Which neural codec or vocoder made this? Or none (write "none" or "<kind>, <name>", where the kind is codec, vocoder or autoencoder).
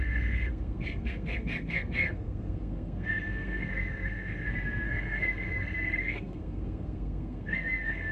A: codec, SNAC